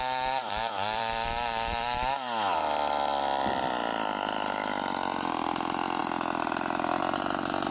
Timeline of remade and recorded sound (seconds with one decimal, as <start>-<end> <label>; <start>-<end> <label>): 0.0-6.0 remade; 6.0-7.0 recorded; 7.0-7.7 remade